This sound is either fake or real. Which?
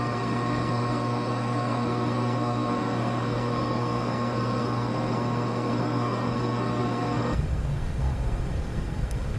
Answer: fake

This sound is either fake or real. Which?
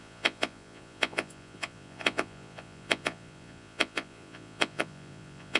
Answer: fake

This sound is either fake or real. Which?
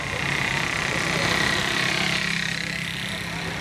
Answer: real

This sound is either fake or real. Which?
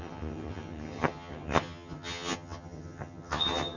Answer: fake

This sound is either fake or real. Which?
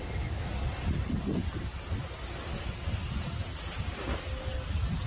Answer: real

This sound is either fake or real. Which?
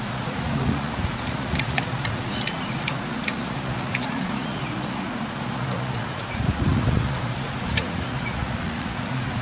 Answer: fake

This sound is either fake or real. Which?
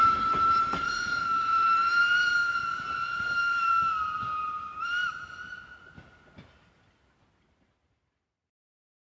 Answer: real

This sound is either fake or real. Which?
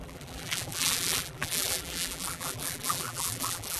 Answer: fake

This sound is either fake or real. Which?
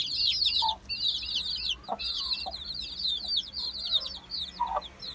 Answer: real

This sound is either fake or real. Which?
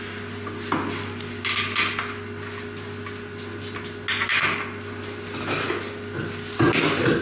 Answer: real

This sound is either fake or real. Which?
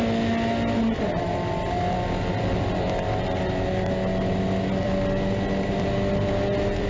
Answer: real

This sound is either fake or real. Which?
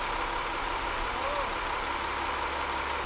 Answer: real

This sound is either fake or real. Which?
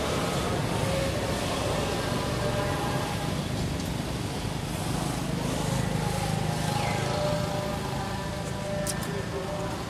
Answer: real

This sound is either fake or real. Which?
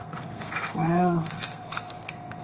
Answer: fake